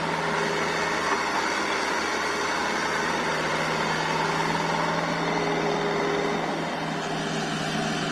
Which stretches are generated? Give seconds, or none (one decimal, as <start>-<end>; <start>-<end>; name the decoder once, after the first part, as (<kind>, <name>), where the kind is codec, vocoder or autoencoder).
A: none

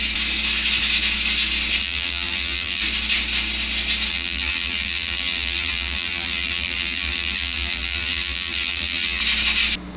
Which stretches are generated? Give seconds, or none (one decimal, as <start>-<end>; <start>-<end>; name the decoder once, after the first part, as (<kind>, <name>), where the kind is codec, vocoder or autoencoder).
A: 1.8-2.8 (vocoder, BigVGAN v2); 4.1-9.2

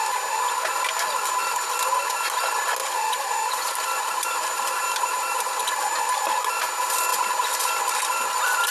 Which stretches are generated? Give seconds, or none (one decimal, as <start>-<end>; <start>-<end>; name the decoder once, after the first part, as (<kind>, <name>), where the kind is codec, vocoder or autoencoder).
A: 2.8-5.5 (vocoder, BigVGAN v2)

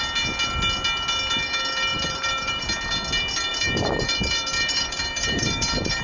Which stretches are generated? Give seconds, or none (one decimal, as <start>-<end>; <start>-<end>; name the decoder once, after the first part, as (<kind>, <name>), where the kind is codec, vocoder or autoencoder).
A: 1.9-2.6 (vocoder, BigVGAN v2); 3.5-6.0

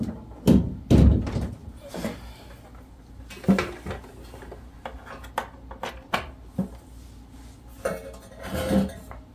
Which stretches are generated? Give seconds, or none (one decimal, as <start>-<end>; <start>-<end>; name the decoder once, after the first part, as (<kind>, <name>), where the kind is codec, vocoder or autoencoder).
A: none

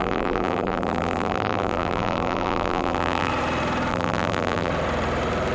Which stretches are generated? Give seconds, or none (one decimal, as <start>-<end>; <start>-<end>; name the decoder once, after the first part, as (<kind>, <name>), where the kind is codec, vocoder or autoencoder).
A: 0.0-3.3 (vocoder, BigVGAN v2); 3.9-4.7